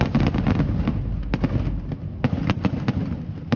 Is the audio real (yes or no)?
yes